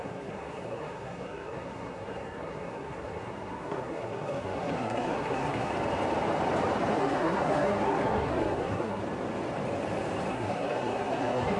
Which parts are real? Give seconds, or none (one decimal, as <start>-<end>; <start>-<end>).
5.7-6.9; 9.0-10.3